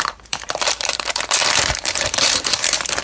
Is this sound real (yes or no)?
no